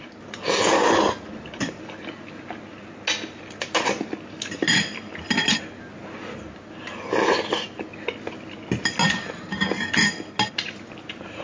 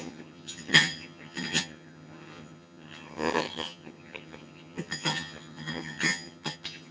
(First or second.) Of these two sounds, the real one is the first